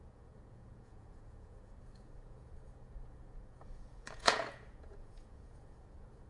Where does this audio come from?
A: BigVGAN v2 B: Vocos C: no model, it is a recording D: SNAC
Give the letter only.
B